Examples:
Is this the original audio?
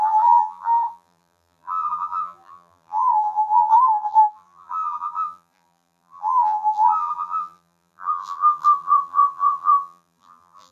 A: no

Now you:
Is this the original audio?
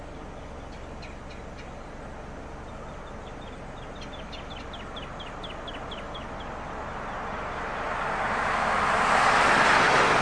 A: yes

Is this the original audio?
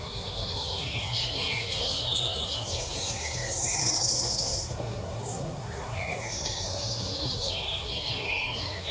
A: no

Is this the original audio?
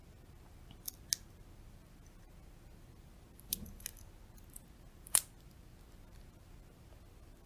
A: yes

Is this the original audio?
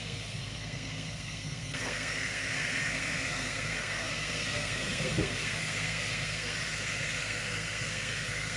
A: no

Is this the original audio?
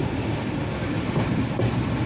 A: yes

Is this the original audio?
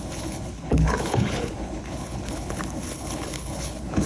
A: no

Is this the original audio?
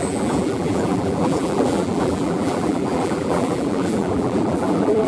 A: no